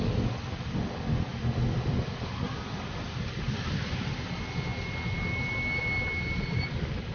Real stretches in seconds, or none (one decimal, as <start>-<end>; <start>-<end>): 0.0-7.1